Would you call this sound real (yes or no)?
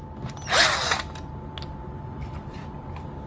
yes